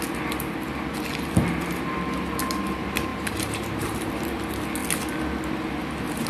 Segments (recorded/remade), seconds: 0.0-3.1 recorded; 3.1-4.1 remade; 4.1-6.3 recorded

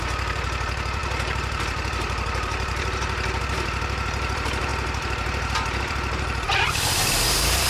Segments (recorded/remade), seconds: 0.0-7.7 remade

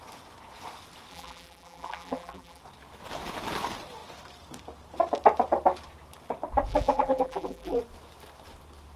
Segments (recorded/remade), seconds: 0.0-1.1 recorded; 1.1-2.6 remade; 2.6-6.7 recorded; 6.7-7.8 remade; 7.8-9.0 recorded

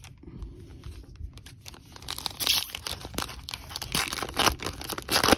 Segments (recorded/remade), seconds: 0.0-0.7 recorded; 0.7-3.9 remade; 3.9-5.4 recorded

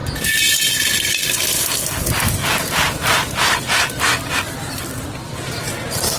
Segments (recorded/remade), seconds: 0.0-2.4 recorded; 2.4-3.6 remade; 3.6-5.2 recorded; 5.2-6.2 remade

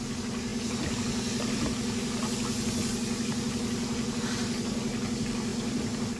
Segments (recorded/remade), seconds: 0.0-6.2 recorded

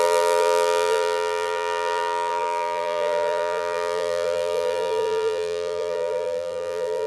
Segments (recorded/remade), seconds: 0.0-7.1 remade